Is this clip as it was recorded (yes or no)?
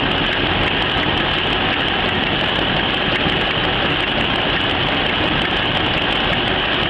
yes